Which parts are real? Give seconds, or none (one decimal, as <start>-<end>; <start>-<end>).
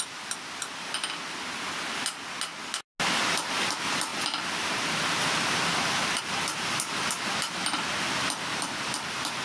0.0-9.4